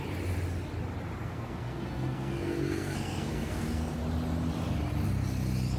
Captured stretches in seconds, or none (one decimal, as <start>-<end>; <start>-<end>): 0.0-1.2; 4.0-5.8